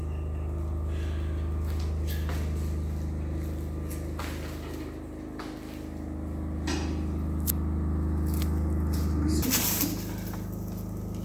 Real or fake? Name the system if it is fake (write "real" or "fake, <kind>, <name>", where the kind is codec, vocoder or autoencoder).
real